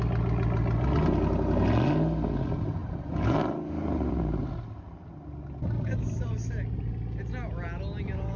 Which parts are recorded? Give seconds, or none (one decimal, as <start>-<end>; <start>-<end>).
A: 0.0-2.8; 4.6-8.4

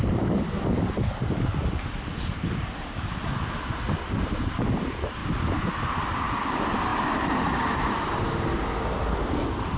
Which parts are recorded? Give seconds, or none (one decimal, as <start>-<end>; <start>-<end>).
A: 0.0-2.1; 3.8-5.2; 6.2-6.9; 8.3-9.8

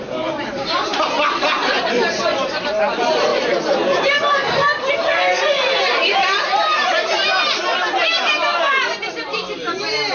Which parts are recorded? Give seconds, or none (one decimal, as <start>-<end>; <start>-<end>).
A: 3.3-4.0; 4.4-5.8

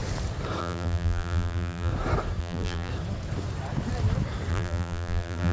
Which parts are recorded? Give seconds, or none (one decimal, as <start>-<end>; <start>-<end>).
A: 0.0-0.6; 1.9-2.4; 2.9-4.5

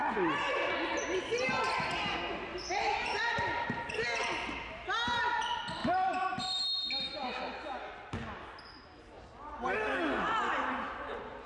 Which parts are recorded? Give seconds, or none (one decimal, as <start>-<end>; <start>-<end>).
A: 0.0-2.5; 3.8-5.8; 6.4-11.5

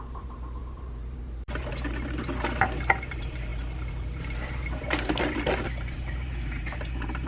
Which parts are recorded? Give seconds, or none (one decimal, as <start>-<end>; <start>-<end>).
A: none

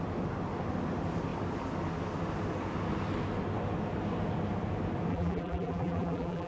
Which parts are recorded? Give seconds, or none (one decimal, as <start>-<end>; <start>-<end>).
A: 0.0-5.1

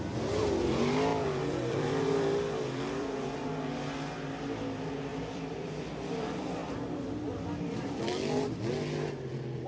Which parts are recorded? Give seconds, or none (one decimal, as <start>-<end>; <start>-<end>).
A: 0.0-1.1; 3.4-5.1; 5.7-6.6; 8.0-9.7